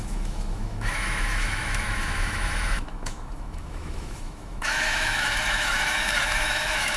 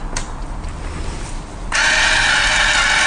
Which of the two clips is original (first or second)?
second